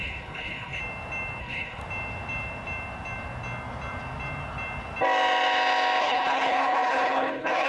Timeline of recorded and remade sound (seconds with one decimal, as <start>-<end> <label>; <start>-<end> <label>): 0.0-0.8 remade; 0.8-1.4 recorded; 1.4-1.8 remade; 1.8-6.0 recorded; 6.0-7.7 remade